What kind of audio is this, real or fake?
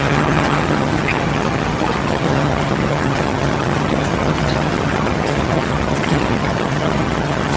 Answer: fake